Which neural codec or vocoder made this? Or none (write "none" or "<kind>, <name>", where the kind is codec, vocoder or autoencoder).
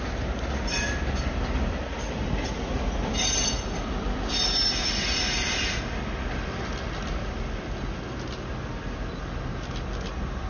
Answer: none